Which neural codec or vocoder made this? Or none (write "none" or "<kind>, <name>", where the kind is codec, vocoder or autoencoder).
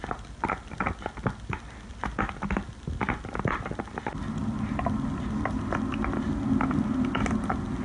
none